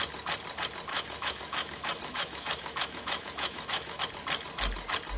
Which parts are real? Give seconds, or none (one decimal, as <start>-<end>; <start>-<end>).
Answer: 0.0-0.9; 4.0-5.2